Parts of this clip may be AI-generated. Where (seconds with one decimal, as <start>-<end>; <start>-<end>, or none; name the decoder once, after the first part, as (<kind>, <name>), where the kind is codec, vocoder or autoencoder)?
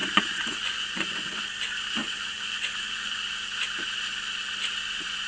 0.0-1.4 (vocoder, Vocos); 2.0-3.2